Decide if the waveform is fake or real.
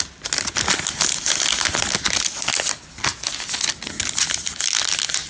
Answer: real